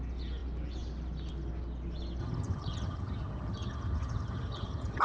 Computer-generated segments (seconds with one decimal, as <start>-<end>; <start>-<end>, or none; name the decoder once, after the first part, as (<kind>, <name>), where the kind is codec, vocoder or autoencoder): 2.2-5.0 (vocoder, HiFi-GAN)